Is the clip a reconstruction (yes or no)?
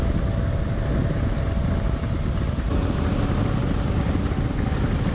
no